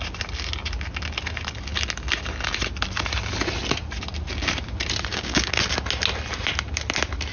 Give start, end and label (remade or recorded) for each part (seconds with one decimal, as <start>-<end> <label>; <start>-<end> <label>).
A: 0.0-5.1 recorded; 5.1-5.6 remade; 5.6-7.3 recorded